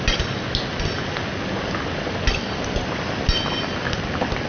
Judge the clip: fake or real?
real